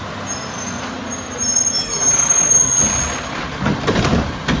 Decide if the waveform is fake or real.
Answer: real